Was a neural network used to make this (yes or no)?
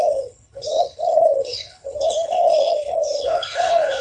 yes